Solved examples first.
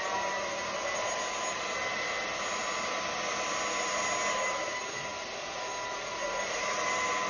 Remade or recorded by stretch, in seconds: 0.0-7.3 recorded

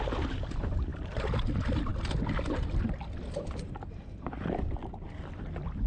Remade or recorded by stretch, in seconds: 0.0-0.9 remade; 0.9-1.4 recorded; 1.4-5.9 remade

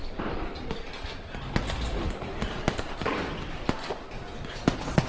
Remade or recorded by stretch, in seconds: 0.0-5.1 recorded

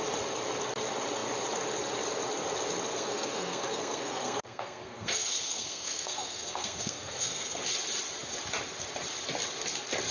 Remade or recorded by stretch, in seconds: 0.0-2.9 recorded; 2.9-7.6 remade; 7.6-10.1 recorded

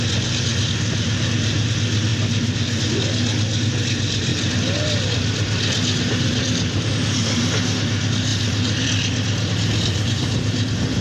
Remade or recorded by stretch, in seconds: 0.0-2.1 recorded; 2.1-2.8 remade; 2.8-4.3 recorded; 4.3-6.9 remade; 6.9-8.3 recorded; 8.3-9.5 remade; 9.5-11.0 recorded

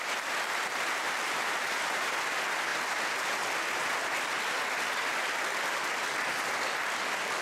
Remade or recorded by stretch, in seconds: 0.0-7.4 recorded

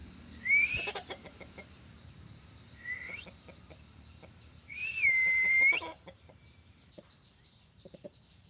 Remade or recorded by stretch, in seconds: 0.0-8.5 remade

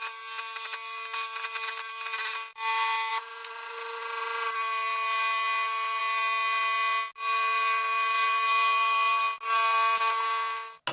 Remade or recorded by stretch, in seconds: 0.0-10.9 recorded